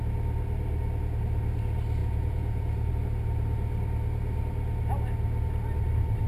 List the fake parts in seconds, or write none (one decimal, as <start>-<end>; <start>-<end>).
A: 2.0-2.9